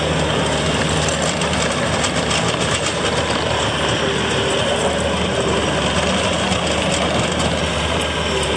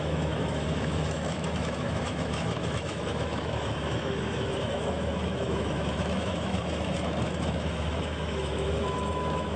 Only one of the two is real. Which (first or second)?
first